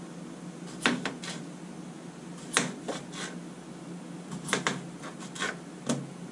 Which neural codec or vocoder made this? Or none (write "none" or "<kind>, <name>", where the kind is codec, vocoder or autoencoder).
none